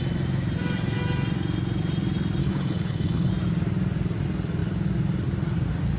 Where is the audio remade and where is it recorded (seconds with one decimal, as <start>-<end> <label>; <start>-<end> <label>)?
0.0-2.4 recorded; 2.4-3.3 remade; 3.3-6.0 recorded